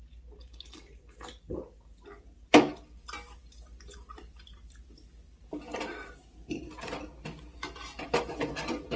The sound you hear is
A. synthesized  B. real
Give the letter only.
B